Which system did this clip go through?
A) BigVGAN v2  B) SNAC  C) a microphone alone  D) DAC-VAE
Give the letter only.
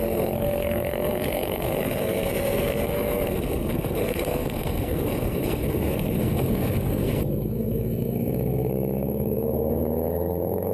B